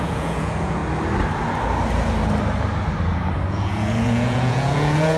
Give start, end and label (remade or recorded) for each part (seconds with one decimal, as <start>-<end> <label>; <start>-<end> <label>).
0.0-0.8 remade; 0.8-3.5 recorded; 3.5-5.2 remade